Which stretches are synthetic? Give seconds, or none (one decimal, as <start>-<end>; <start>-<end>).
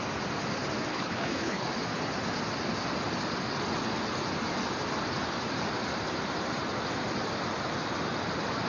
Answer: 0.9-1.7